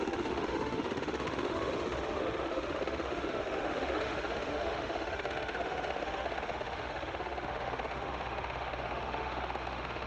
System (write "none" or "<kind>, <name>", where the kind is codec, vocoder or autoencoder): autoencoder, DAC-VAE